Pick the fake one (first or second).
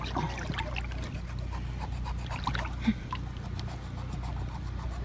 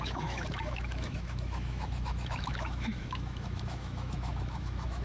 second